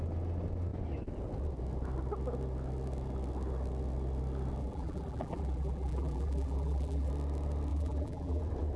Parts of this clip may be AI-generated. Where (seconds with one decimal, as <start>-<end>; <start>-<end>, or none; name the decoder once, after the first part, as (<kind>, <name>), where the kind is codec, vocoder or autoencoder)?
4.6-7.1 (vocoder, BigVGAN v2); 7.7-8.4